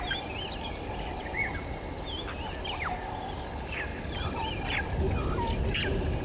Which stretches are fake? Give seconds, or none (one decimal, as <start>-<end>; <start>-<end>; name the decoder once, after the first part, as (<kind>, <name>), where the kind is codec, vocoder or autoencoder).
none